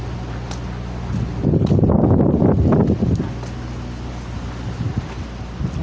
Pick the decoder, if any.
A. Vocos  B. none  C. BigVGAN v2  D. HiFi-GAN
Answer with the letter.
B